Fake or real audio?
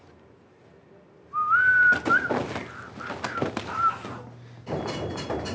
real